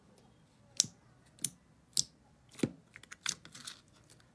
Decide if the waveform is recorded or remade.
recorded